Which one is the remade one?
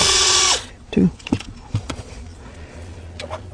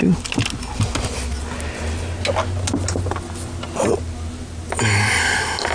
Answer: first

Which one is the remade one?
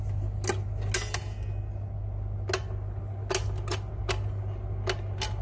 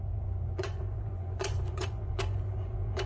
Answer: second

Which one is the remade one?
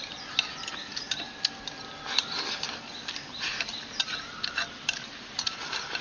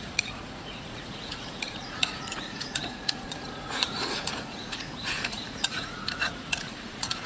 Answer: second